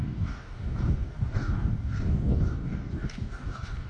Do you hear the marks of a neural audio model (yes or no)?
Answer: yes